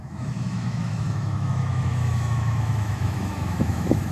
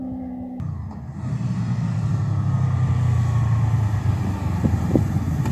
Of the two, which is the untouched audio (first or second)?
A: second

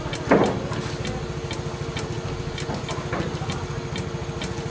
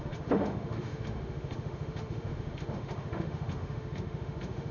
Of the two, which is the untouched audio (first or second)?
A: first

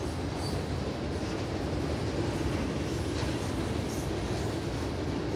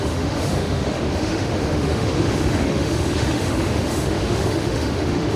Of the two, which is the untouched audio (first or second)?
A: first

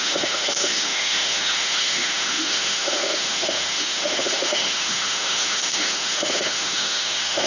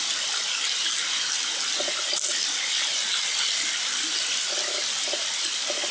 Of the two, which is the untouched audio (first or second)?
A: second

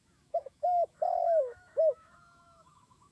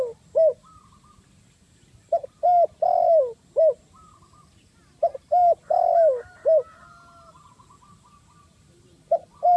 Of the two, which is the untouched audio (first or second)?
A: second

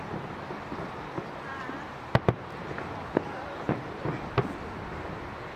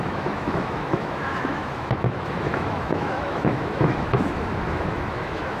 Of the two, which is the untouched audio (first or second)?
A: first